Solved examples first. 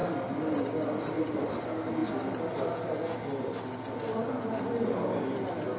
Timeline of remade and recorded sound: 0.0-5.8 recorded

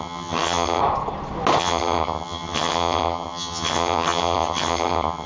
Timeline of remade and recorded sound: 0.0-0.8 remade; 0.8-1.6 recorded; 1.6-5.3 remade

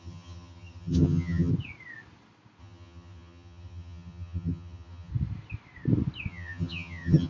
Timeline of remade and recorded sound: 0.0-1.5 remade; 1.5-2.6 recorded; 2.6-5.1 remade; 5.1-6.3 recorded; 6.3-7.3 remade

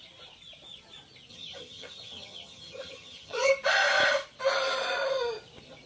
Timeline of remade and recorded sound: 0.0-1.3 recorded; 1.3-3.5 remade; 3.5-5.9 recorded

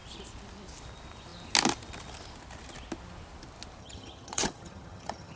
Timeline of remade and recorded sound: 0.0-3.8 recorded; 3.8-5.4 remade

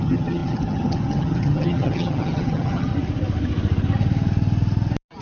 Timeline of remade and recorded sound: 0.0-2.9 remade; 2.9-5.2 recorded

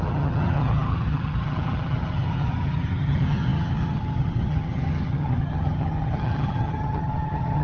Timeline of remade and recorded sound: 0.0-7.6 remade